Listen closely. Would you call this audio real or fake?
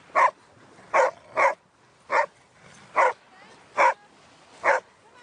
real